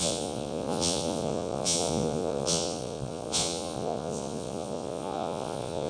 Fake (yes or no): yes